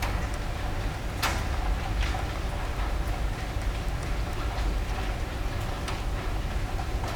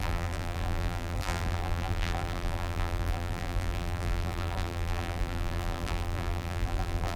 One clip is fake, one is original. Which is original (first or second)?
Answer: first